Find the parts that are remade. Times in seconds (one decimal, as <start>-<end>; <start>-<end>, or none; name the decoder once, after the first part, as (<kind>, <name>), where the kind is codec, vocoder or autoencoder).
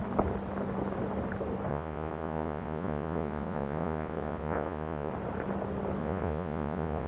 1.7-5.1 (vocoder, Vocos); 6.0-7.1